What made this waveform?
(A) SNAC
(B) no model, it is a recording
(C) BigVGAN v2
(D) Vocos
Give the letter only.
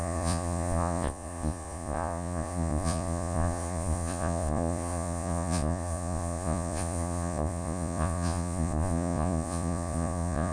D